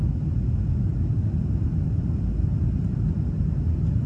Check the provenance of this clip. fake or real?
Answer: real